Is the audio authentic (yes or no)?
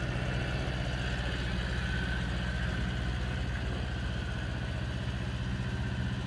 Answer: yes